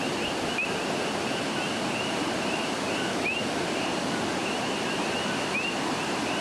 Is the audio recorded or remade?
recorded